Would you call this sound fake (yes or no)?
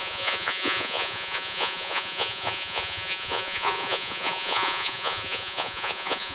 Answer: yes